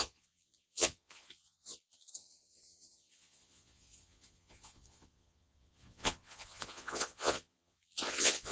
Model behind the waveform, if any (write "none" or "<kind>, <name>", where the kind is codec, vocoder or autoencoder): vocoder, Vocos